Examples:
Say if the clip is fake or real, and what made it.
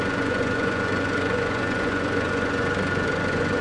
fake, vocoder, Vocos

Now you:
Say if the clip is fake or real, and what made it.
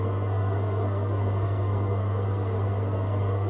fake, codec, SNAC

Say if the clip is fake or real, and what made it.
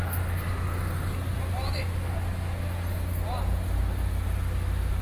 real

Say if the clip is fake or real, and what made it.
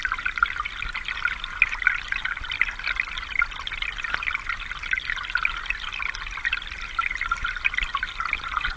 real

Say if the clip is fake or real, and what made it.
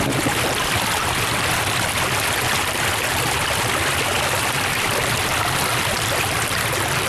fake, vocoder, BigVGAN v2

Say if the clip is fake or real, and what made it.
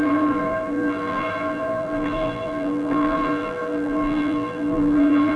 fake, vocoder, BigVGAN v2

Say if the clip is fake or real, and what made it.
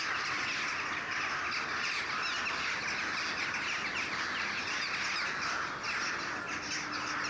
real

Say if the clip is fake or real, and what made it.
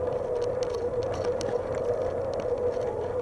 real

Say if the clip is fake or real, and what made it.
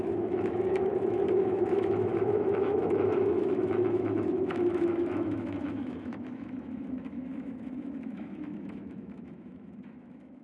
fake, autoencoder, DAC-VAE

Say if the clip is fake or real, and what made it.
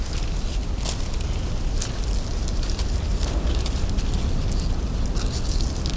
real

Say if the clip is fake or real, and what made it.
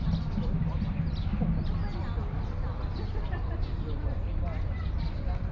real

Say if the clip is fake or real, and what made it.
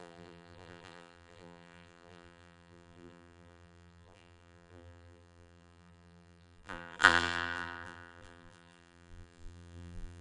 fake, vocoder, BigVGAN v2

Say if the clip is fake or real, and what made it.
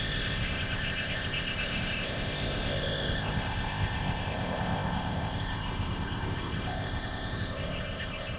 fake, codec, ZipCodec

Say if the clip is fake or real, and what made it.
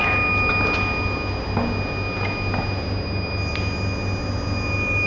real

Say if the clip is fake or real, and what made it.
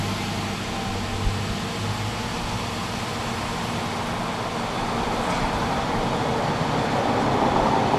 real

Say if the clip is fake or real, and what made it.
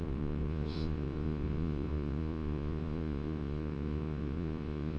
fake, vocoder, Vocos